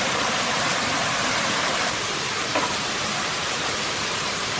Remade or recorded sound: remade